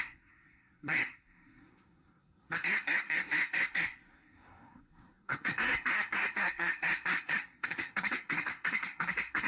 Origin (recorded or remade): remade